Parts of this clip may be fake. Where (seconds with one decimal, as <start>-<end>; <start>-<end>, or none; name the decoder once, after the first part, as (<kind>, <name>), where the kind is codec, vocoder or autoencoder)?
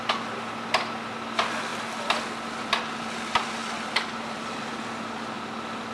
none